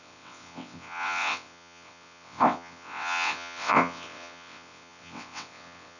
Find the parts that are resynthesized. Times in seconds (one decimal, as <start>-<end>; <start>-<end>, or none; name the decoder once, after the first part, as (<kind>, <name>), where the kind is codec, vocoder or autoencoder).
0.0-6.0 (vocoder, WaveNeXt)